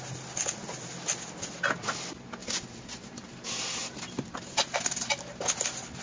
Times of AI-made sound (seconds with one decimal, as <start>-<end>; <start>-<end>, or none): 2.4-5.4